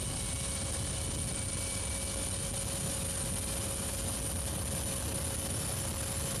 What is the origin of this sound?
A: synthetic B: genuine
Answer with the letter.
B